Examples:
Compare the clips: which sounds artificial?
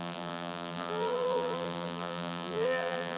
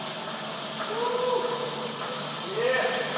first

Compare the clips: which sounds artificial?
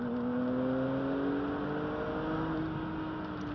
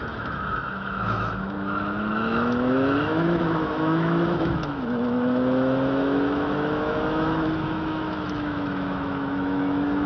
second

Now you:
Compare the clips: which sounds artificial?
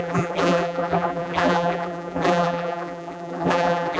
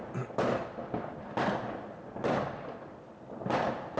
first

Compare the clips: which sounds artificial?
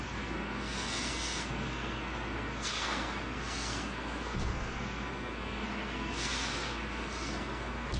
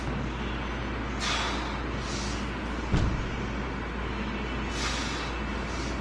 first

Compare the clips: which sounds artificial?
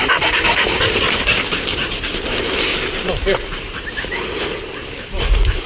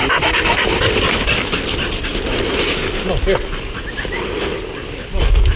first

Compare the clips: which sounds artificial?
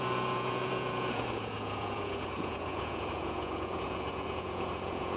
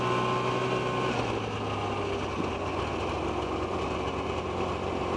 first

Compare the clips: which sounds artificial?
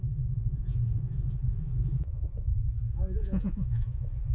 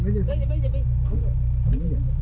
first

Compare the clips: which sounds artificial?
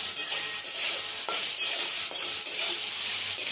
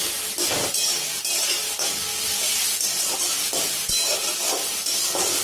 first